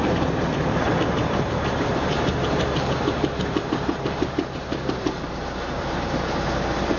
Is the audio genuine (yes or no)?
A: no